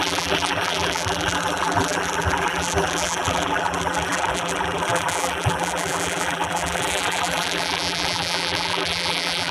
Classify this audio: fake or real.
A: fake